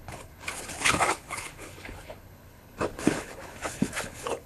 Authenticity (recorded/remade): remade